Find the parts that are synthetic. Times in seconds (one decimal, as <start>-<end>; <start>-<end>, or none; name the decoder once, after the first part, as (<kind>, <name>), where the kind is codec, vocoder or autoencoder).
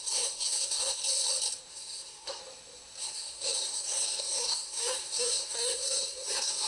0.0-1.0 (codec, SNAC); 1.7-2.4; 3.0-6.7